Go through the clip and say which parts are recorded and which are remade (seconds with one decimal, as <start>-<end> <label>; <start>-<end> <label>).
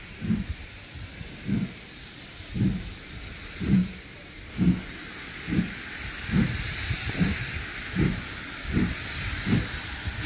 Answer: 0.0-10.3 recorded